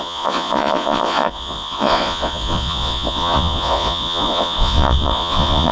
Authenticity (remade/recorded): remade